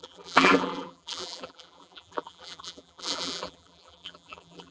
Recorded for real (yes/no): no